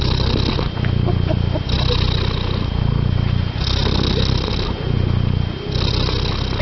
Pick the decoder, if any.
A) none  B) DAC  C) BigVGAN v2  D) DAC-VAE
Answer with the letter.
A